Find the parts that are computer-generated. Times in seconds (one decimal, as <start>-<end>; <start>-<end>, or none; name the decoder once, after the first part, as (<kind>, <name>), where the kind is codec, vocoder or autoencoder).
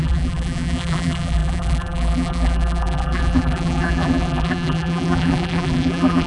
0.0-6.3 (vocoder, BigVGAN v2)